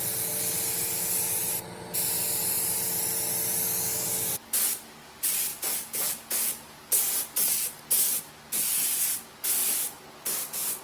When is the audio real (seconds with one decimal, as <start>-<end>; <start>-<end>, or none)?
0.0-10.8